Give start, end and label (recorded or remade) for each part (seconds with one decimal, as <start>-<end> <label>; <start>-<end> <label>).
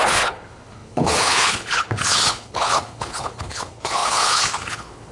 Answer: 0.0-5.1 remade